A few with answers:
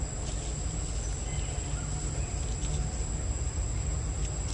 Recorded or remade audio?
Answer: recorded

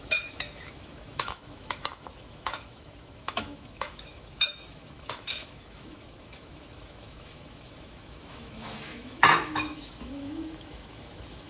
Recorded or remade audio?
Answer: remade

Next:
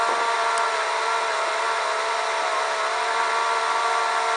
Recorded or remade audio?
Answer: recorded